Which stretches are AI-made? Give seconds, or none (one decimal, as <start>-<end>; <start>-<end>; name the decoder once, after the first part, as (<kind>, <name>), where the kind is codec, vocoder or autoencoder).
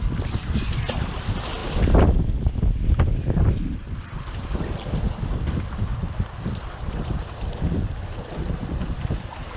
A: 6.0-9.6 (vocoder, BigVGAN v2)